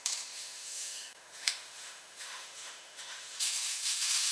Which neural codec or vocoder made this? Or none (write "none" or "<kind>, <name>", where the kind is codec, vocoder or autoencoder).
autoencoder, DAC-VAE